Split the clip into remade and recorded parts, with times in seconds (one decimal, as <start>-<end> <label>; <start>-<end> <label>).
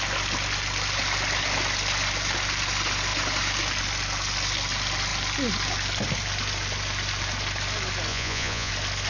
0.0-8.1 recorded; 8.1-8.7 remade; 8.7-9.1 recorded